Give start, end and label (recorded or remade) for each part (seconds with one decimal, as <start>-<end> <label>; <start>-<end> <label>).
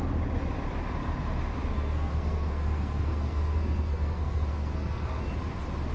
0.0-1.7 recorded; 1.7-5.2 remade; 5.2-5.9 recorded